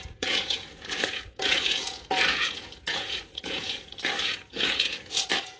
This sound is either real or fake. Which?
fake